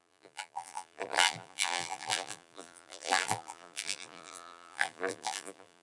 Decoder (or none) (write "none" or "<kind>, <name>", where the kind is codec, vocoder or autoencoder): vocoder, BigVGAN v2